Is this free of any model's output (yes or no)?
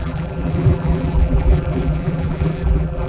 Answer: no